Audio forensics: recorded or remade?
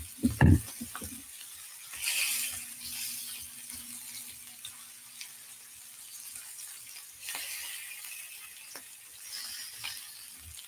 recorded